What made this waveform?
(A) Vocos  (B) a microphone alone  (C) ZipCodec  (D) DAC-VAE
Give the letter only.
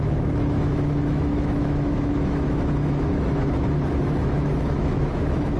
D